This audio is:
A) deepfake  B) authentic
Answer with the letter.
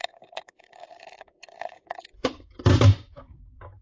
A